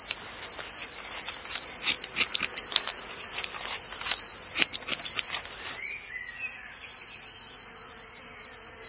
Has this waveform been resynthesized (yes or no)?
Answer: no